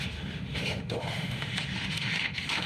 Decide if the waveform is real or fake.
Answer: fake